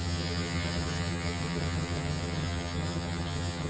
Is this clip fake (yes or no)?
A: yes